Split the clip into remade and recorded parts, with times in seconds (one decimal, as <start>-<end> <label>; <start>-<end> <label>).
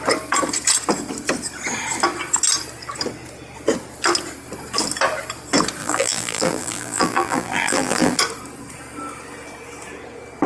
0.0-5.8 recorded; 5.8-8.2 remade; 8.2-10.5 recorded